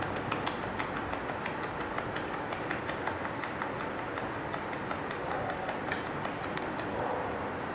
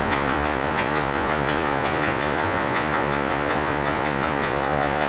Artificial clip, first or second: second